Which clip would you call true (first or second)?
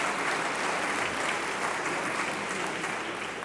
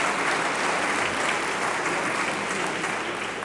second